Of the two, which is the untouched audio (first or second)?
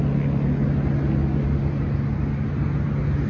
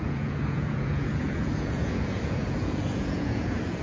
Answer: first